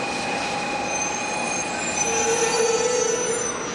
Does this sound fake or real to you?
real